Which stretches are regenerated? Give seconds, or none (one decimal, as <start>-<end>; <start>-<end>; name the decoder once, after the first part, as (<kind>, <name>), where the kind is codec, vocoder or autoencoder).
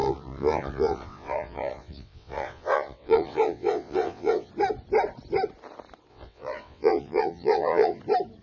0.0-4.5 (vocoder, WaveNeXt); 6.1-8.0